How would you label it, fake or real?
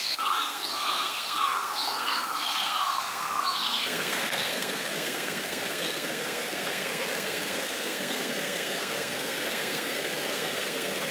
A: fake